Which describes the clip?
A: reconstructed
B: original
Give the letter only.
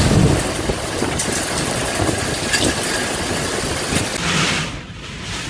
B